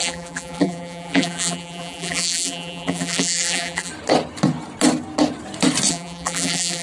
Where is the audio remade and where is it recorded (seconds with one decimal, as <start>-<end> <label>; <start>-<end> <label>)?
0.0-3.9 remade; 3.9-5.9 recorded; 5.9-6.8 remade